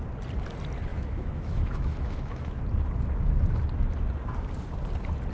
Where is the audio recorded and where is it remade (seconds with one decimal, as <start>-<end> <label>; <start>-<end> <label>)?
0.0-0.9 recorded; 0.9-2.6 remade; 2.6-5.3 recorded